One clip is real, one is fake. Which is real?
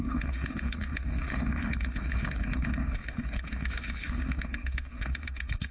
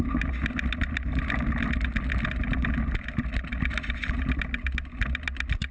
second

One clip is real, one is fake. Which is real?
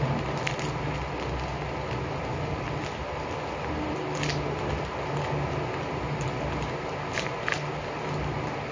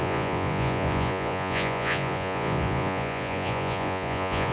first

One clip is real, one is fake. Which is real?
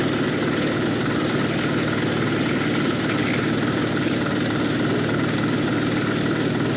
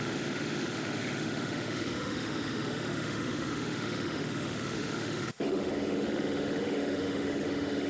first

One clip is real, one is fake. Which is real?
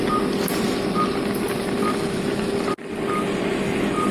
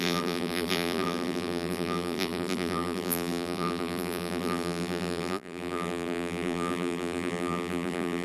first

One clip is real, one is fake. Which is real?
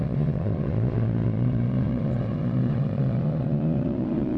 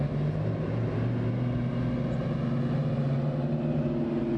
second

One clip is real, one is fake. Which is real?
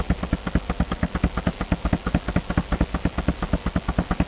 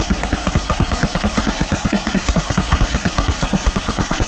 first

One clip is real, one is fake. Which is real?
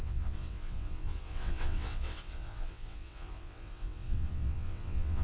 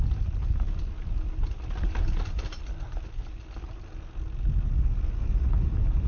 second